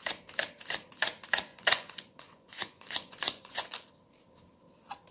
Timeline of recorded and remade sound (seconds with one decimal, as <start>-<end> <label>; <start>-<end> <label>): 0.0-1.5 recorded; 1.5-3.9 remade; 3.9-5.1 recorded